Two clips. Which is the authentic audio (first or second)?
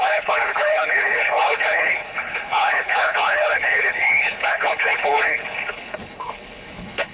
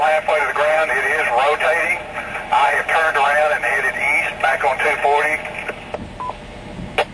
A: second